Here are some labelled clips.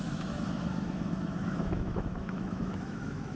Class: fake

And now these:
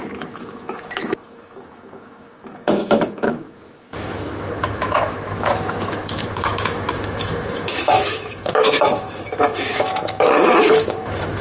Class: fake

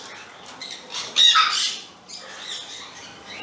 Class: real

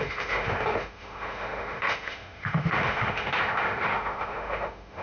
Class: fake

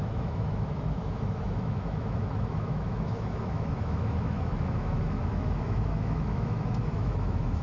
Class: fake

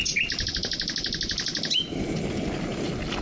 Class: real